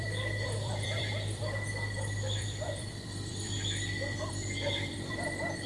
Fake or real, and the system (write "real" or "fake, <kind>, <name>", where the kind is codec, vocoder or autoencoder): fake, vocoder, BigVGAN v2